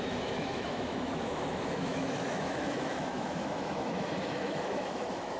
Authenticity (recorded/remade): remade